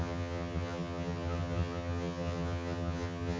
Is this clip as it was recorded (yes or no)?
no